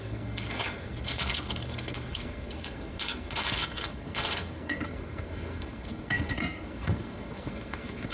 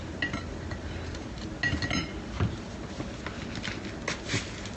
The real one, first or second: second